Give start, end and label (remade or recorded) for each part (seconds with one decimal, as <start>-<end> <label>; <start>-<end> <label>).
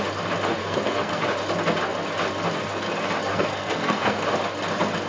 0.0-0.6 recorded; 0.6-1.2 remade; 1.2-3.3 recorded; 3.3-4.2 remade; 4.2-5.1 recorded